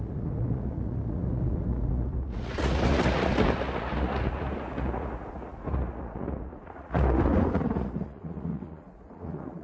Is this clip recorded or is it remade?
remade